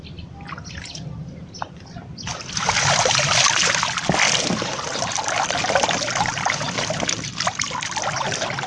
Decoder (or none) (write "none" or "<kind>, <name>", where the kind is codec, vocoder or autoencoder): none